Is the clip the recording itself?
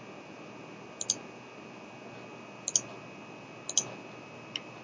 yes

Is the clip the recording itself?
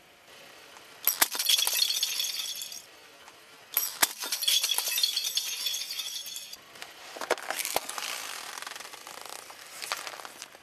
yes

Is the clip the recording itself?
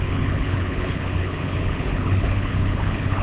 no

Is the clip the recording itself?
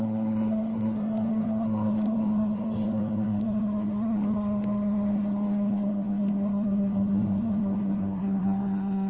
no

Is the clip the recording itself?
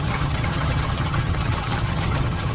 no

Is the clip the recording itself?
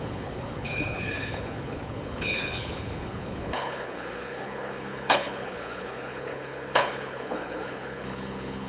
no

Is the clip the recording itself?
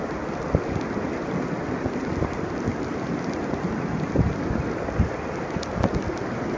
yes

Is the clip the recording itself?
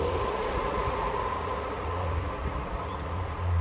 no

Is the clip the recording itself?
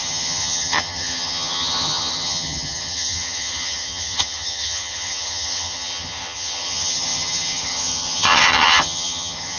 no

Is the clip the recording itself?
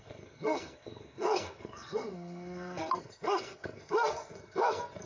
no